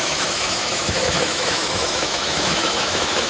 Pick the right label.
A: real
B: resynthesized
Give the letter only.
B